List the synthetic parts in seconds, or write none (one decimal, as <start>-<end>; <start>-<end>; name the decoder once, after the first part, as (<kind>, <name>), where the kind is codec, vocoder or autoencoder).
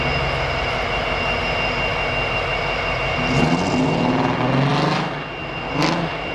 none